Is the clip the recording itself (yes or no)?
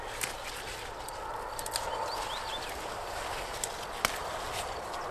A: yes